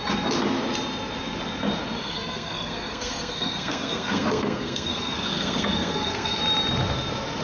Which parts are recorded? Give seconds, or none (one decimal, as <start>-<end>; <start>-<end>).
0.0-2.0; 6.4-7.4